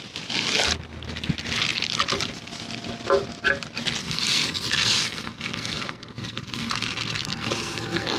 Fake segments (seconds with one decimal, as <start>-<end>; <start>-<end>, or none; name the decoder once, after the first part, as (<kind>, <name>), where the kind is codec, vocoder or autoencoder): 4.0-8.2 (codec, SNAC)